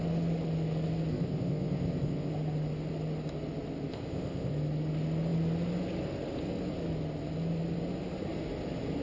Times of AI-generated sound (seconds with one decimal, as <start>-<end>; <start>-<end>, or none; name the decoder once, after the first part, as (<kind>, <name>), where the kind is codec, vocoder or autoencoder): 1.1-2.3 (codec, ZipCodec); 3.9-4.5